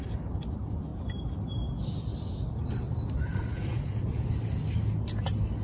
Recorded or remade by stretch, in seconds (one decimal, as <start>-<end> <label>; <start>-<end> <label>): 0.0-3.3 recorded; 3.3-4.1 remade; 4.1-5.6 recorded